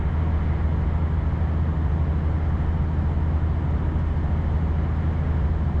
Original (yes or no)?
yes